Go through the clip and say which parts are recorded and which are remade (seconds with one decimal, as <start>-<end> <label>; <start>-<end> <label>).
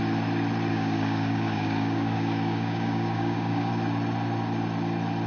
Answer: 0.0-0.7 recorded; 0.7-3.7 remade; 3.7-5.3 recorded